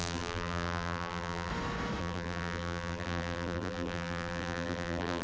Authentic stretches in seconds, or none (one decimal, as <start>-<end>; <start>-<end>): 1.5-2.0